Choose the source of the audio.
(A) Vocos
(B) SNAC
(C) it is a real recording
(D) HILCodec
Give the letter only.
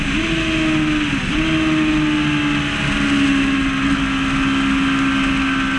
C